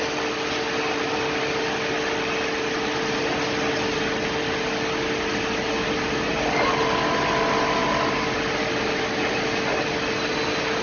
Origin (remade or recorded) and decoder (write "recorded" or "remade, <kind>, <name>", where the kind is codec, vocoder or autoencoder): recorded